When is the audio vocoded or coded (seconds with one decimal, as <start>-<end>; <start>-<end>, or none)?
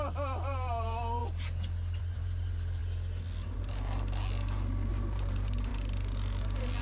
0.0-1.2; 2.0-2.8; 4.9-5.7